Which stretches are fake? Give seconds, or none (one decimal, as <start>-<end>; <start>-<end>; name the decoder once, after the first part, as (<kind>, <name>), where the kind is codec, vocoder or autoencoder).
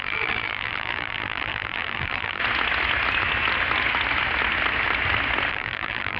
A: 0.0-2.4 (vocoder, BigVGAN v2); 5.5-6.2